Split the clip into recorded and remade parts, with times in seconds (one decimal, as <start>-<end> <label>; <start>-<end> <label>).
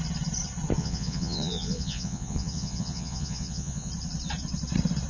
0.0-0.8 recorded; 0.8-3.9 remade; 3.9-5.1 recorded